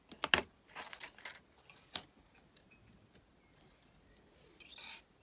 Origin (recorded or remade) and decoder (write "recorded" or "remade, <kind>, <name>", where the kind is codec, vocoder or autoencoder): recorded